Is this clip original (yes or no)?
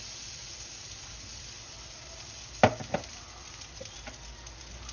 yes